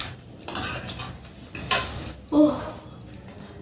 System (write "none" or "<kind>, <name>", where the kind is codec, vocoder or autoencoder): none